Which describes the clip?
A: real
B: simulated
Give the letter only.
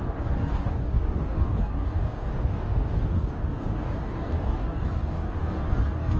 B